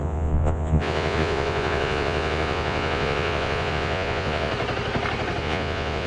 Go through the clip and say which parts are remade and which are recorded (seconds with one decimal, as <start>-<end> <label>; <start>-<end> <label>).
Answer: 0.0-4.5 remade; 4.5-5.4 recorded; 5.4-6.1 remade